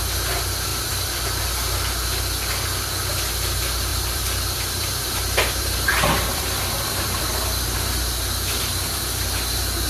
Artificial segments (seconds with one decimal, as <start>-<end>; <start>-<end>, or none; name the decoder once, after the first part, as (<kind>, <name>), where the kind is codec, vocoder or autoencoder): 0.7-1.4 (vocoder, BigVGAN v2); 3.9-7.2